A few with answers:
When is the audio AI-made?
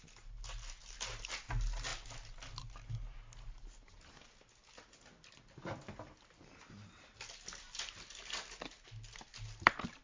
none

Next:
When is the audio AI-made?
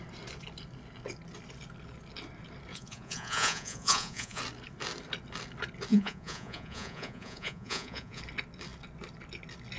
2.7-4.4 (vocoder, Vocos); 5.9-8.2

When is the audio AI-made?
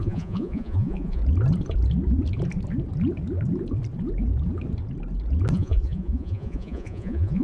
0.0-1.2 (vocoder, Vocos); 5.5-7.4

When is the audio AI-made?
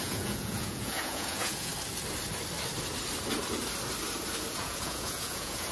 0.0-1.7 (vocoder, Vocos); 4.5-5.7